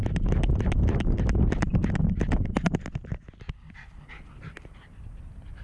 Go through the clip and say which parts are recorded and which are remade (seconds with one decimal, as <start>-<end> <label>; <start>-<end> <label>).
0.0-1.2 recorded; 1.2-1.8 remade; 1.8-3.5 recorded; 3.5-5.6 remade